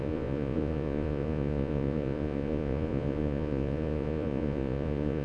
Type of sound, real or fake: fake